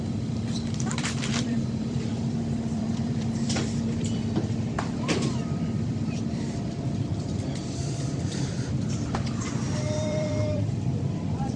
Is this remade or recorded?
remade